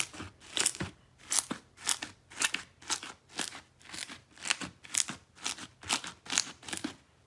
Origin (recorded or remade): recorded